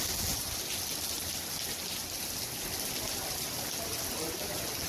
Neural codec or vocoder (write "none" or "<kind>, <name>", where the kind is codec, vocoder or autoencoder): none